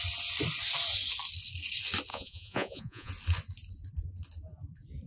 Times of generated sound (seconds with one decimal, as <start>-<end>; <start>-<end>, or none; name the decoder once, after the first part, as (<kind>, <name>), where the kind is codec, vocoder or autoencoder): 2.1-3.1 (vocoder, Vocos)